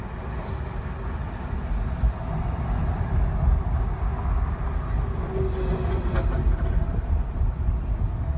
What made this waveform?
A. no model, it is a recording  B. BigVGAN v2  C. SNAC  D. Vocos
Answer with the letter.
A